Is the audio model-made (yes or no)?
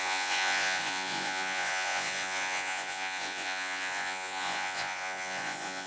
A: yes